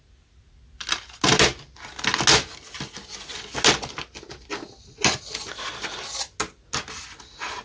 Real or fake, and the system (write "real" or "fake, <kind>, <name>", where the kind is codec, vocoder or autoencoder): real